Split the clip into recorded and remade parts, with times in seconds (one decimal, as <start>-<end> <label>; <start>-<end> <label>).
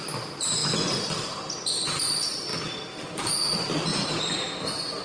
0.0-0.6 recorded; 0.6-2.0 remade; 2.0-3.9 recorded; 3.9-4.6 remade; 4.6-5.0 recorded